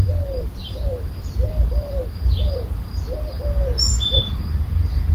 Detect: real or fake fake